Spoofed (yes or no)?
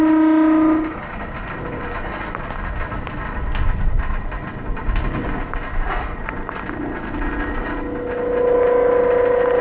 no